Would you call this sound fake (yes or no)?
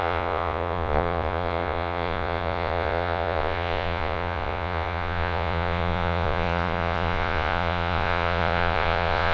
yes